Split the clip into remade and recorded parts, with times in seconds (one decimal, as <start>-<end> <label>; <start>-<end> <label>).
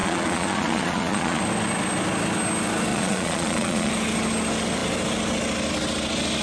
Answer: 0.0-1.4 remade; 1.4-2.9 recorded; 2.9-3.9 remade; 3.9-6.4 recorded